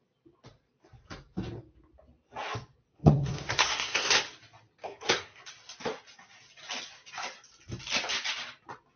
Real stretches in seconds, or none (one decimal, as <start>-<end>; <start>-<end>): 0.0-2.9; 4.2-4.8; 5.4-9.0